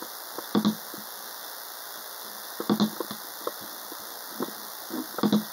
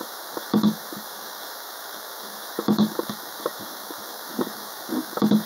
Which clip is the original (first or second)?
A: first